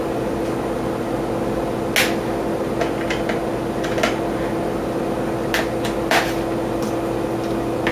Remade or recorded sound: recorded